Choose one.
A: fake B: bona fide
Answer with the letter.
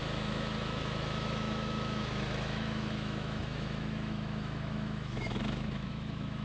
A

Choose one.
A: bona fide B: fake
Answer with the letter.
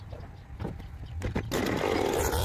A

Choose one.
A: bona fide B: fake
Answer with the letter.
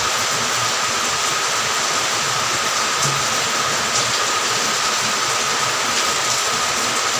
A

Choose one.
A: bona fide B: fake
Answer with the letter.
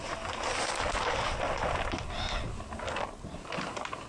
A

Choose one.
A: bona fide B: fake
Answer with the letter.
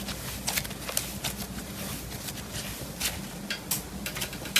A